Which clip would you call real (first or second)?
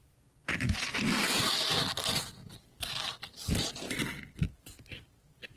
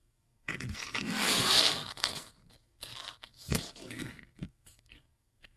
first